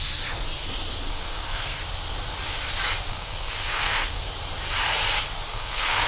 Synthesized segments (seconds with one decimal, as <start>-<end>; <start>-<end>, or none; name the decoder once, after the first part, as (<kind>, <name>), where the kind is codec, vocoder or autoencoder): 1.1-1.8 (codec, SNAC); 3.1-4.3; 5.5-6.1